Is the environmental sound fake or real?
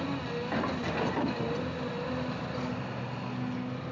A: real